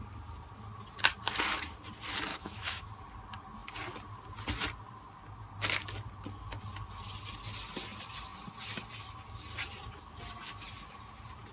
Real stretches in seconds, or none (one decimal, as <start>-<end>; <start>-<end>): 0.0-2.3; 2.9-11.5

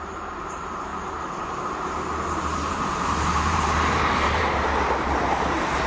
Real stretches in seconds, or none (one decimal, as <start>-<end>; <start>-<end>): none

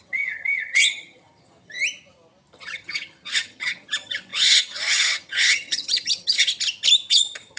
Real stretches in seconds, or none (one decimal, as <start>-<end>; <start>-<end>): 1.8-2.5; 6.5-7.1

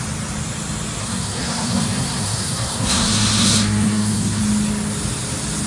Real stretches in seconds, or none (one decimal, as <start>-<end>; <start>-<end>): 0.0-1.0; 4.4-5.7

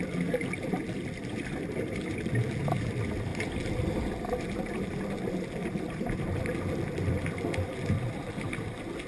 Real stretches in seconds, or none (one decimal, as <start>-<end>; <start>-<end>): 0.0-9.1